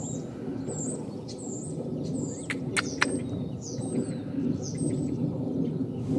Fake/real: real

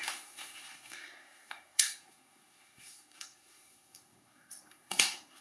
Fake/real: fake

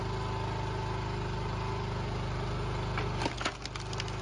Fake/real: real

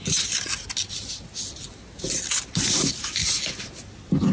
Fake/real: real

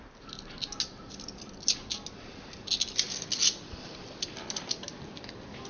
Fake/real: real